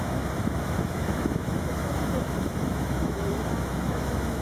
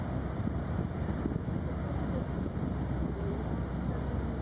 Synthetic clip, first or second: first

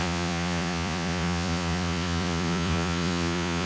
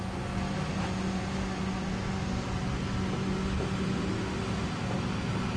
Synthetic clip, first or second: first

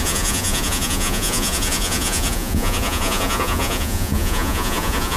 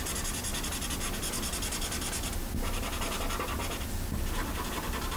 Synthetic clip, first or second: first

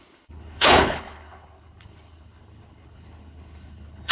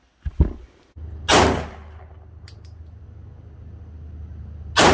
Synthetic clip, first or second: first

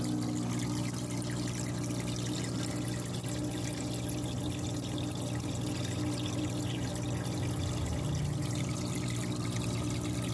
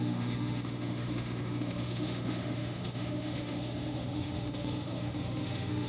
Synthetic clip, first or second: second